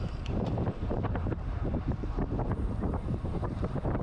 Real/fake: fake